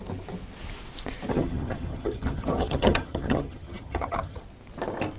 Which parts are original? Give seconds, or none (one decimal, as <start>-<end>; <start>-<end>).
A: 0.0-1.3; 4.4-5.2